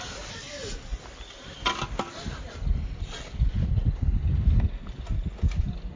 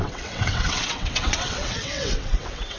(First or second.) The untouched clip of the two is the first